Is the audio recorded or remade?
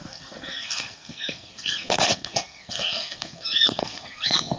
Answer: remade